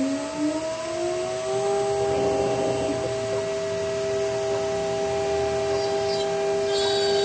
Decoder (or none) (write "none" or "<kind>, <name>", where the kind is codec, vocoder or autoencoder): none